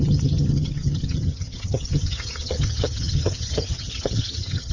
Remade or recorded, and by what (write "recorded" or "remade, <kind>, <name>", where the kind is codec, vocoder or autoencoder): remade, vocoder, HiFi-GAN